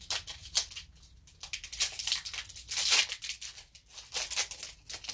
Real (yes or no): yes